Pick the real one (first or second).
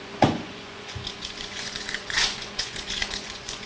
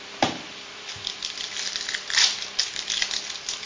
second